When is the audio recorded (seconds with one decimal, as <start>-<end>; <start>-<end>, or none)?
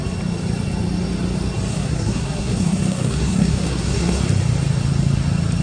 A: 0.0-1.7; 4.2-5.6